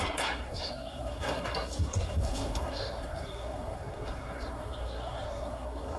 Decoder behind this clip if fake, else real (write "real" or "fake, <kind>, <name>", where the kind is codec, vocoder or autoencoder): fake, codec, SNAC